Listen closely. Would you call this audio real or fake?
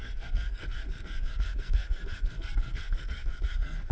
fake